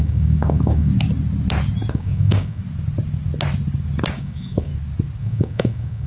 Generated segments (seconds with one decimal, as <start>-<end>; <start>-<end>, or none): 0.0-0.9; 1.9-2.6; 4.1-4.7; 5.2-6.1